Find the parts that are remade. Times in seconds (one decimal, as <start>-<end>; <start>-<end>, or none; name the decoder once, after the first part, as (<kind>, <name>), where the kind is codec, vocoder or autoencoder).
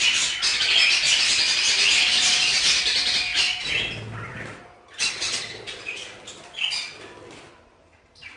none